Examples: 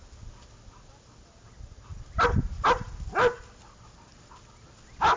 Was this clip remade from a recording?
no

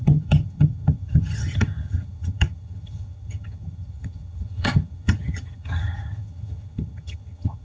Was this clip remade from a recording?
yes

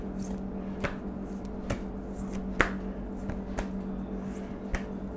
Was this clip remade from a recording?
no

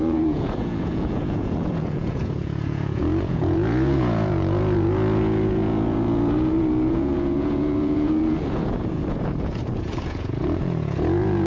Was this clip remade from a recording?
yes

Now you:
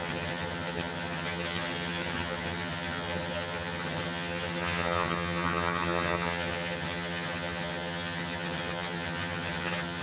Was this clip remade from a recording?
yes